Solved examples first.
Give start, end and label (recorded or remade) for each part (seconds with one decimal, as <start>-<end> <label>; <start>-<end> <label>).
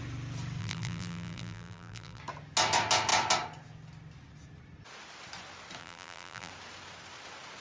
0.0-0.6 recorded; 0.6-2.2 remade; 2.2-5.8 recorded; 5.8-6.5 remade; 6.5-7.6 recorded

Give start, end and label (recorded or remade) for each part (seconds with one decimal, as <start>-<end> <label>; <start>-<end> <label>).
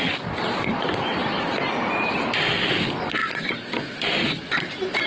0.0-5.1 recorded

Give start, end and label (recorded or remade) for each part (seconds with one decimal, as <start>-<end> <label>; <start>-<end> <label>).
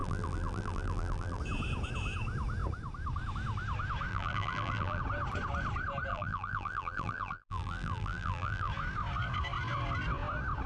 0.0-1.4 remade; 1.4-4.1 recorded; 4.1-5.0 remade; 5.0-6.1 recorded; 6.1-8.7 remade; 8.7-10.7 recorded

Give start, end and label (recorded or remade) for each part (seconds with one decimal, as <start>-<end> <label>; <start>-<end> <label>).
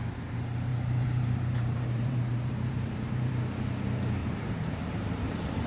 0.0-0.7 recorded; 0.7-3.4 remade; 3.4-4.2 recorded; 4.2-5.7 remade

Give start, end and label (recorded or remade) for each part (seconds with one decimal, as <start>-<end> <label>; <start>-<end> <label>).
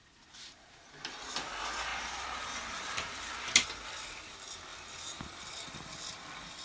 0.0-1.9 recorded; 1.9-3.3 remade; 3.3-6.6 recorded